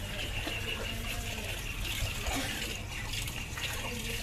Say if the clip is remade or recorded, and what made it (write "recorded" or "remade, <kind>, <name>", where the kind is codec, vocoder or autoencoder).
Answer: recorded